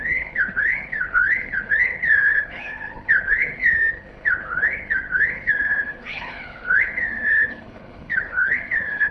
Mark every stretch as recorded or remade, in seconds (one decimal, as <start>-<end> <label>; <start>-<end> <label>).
0.0-9.1 remade